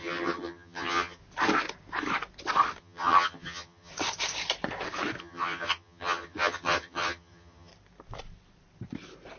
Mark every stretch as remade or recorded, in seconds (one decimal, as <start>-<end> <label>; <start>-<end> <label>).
0.0-1.2 remade; 1.2-2.8 recorded; 2.8-3.9 remade; 3.9-5.2 recorded; 5.2-7.7 remade; 7.7-9.4 recorded